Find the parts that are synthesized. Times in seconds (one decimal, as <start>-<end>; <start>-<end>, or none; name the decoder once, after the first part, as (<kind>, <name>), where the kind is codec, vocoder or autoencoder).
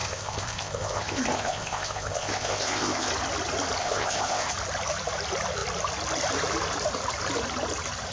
0.0-3.1 (codec, ZipCodec); 3.8-4.5